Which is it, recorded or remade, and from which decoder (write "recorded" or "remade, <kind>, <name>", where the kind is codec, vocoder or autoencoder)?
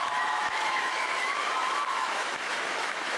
remade, autoencoder, DAC-VAE